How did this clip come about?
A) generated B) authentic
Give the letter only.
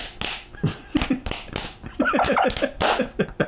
B